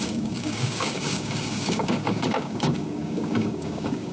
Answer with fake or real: fake